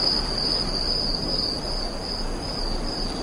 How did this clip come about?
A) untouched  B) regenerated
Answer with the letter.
A